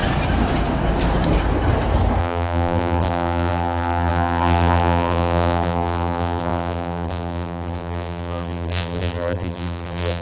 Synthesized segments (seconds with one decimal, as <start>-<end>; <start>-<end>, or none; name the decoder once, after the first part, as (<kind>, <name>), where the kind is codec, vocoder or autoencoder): 2.2-10.2 (vocoder, BigVGAN v2)